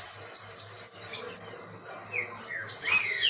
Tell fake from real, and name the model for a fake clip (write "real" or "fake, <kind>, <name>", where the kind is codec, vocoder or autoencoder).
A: real